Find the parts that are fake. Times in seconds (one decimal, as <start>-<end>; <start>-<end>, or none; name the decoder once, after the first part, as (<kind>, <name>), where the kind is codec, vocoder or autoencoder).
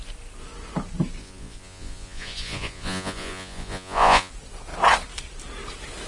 1.2-4.3 (vocoder, Vocos)